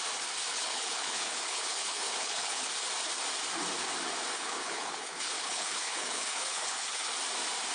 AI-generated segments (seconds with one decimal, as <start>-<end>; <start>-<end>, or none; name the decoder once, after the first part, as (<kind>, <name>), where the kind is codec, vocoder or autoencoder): 0.5-2.7 (codec, HILCodec); 4.3-7.1